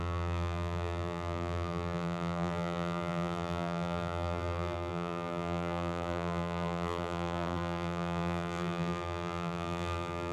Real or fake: fake